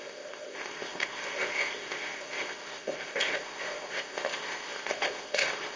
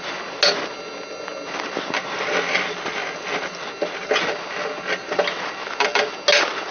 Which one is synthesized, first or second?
first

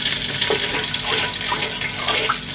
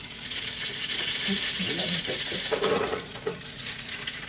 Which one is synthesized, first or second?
second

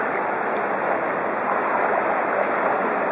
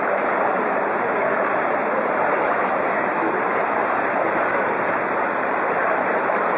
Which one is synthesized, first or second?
second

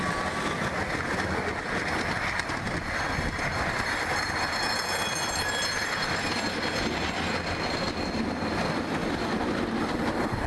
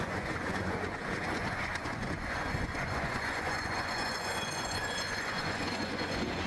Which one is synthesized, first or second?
second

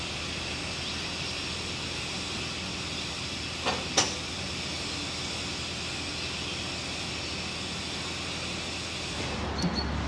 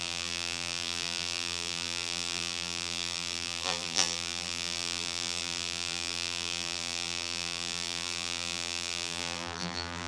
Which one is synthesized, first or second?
second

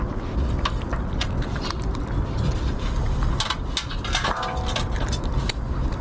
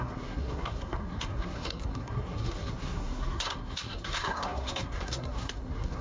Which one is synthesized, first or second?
second